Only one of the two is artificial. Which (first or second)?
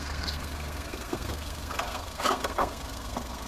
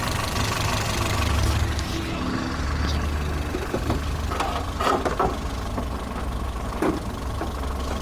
first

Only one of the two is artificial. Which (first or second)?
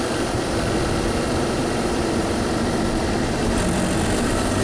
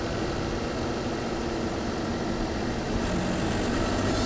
first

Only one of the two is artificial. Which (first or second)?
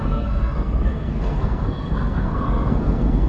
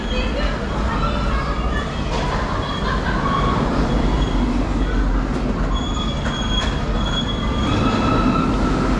first